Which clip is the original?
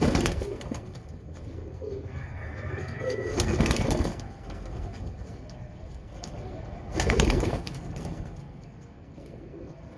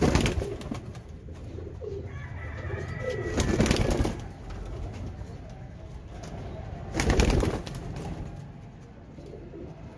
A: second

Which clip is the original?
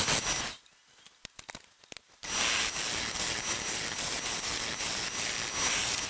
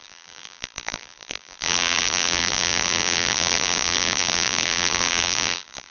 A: first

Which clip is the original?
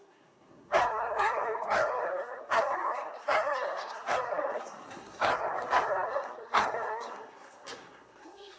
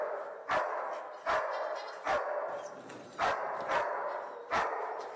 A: second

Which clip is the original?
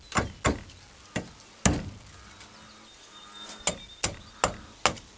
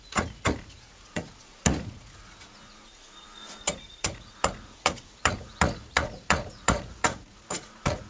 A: first